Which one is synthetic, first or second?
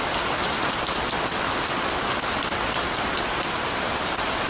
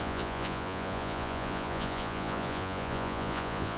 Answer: second